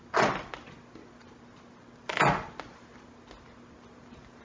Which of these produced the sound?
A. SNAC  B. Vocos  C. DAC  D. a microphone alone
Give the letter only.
D